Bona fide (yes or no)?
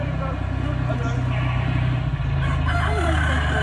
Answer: yes